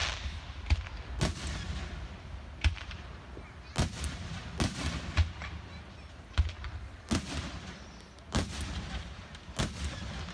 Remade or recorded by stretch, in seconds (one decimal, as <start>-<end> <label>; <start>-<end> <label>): 0.0-10.3 recorded